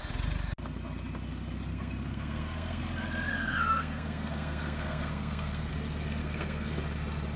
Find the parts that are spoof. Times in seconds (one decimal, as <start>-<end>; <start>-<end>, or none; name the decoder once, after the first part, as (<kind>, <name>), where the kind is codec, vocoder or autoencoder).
1.7-2.8 (codec, SNAC); 3.3-5.7; 6.2-6.8